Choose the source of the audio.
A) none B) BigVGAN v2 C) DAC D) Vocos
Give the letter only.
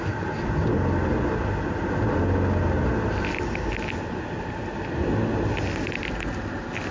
A